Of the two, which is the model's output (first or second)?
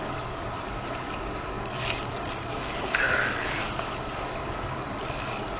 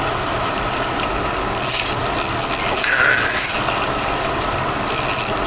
first